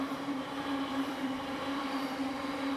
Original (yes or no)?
no